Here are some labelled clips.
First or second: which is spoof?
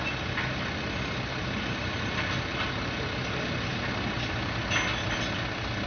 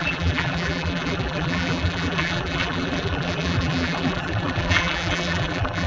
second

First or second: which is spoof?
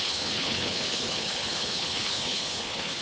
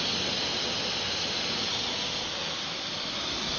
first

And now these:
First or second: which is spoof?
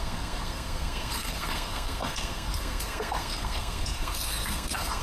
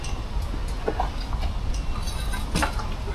first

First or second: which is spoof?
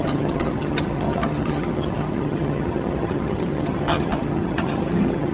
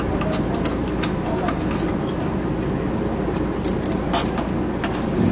first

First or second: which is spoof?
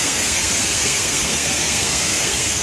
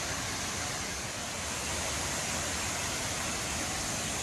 first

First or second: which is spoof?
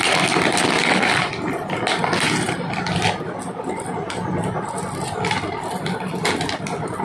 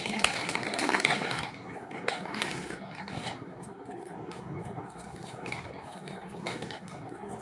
second